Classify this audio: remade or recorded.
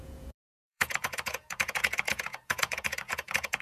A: remade